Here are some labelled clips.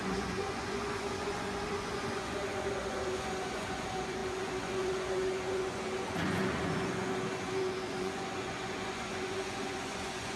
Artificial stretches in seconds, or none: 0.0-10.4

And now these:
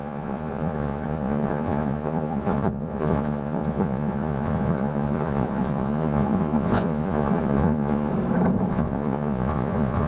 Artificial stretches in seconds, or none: 0.0-8.1; 8.7-10.1

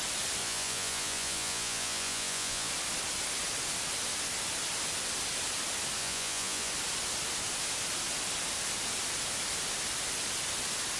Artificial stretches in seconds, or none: 0.4-2.7; 6.0-6.7

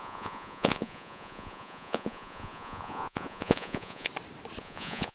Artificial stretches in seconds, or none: 0.0-4.1; 4.6-5.1

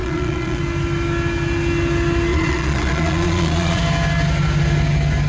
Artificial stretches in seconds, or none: 0.0-0.6; 2.3-3.8

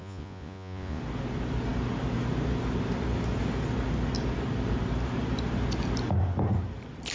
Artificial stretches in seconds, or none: 0.0-1.0

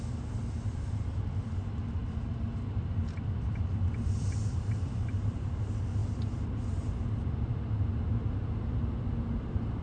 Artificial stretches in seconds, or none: none